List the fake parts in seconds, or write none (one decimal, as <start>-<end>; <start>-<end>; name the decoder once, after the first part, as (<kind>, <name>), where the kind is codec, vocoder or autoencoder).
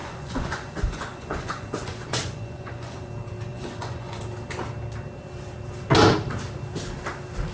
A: 0.0-3.1 (vocoder, Vocos); 3.5-4.2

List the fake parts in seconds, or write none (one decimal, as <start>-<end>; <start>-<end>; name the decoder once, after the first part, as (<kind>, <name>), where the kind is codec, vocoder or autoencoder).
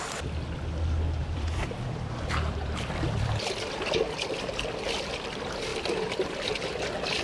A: 1.2-3.6 (vocoder, BigVGAN v2); 5.7-6.8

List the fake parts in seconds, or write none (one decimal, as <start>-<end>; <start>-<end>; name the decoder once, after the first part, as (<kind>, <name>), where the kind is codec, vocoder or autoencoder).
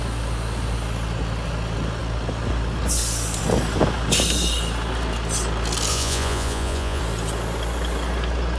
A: 5.9-7.0 (vocoder, Vocos)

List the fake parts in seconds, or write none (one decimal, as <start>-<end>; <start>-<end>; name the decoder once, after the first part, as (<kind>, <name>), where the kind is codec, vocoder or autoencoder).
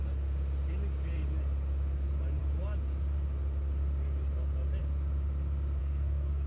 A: 5.8-6.5 (codec, SNAC)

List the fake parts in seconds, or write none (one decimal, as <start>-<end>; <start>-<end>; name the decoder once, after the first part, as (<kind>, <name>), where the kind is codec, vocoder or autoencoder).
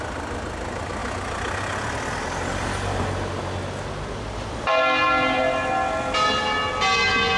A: none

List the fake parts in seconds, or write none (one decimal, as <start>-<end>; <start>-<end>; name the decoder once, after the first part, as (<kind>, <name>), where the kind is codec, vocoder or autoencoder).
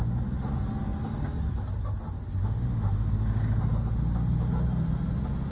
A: 2.4-3.1 (autoencoder, DAC-VAE)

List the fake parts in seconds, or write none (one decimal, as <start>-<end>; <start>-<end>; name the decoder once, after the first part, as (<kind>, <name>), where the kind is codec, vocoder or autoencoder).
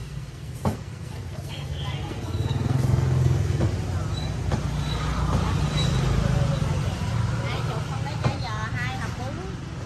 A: 0.0-3.7 (codec, SNAC)